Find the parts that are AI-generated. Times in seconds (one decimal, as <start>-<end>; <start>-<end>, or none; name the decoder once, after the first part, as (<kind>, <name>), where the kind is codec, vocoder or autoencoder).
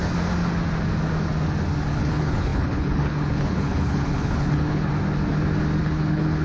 1.9-4.9 (codec, HILCodec); 5.8-6.4